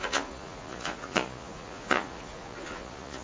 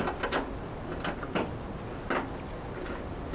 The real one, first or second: second